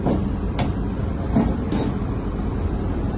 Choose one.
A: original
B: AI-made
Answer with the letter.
B